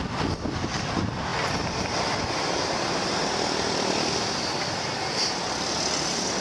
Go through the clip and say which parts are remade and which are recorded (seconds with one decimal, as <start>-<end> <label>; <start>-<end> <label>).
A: 0.0-6.4 recorded